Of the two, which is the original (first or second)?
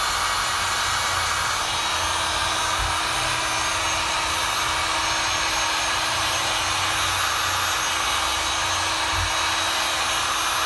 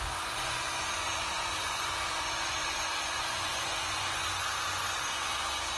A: first